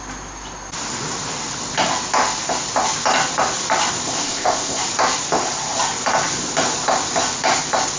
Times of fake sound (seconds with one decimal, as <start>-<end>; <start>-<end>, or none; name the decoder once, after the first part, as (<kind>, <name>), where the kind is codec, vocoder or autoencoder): 4.2-4.8 (codec, ZipCodec)